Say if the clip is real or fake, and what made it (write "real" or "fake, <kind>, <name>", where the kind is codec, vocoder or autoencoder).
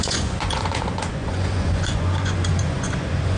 fake, vocoder, Vocos